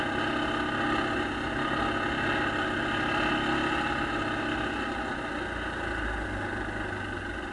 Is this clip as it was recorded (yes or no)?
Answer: yes